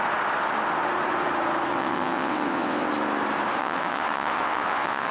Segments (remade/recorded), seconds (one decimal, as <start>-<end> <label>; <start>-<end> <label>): 0.0-1.7 recorded; 1.7-2.9 remade; 2.9-3.6 recorded; 3.6-5.1 remade